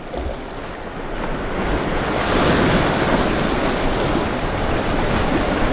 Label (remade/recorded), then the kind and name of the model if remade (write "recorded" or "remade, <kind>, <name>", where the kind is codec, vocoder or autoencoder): recorded